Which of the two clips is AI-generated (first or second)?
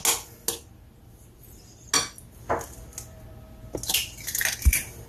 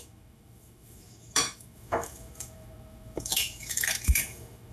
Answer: second